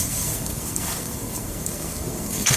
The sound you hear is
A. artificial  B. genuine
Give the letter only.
A